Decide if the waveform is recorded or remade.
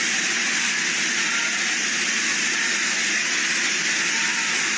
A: recorded